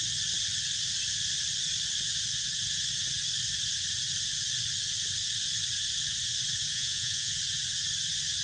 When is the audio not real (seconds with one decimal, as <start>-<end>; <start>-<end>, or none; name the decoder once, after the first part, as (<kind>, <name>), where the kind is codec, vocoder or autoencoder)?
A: 6.7-7.4 (vocoder, Vocos)